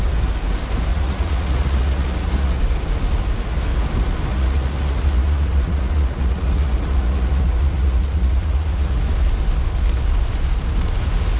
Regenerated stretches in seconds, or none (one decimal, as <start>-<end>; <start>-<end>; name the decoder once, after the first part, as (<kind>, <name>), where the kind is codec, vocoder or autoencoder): 0.9-2.6 (vocoder, Vocos); 4.3-9.0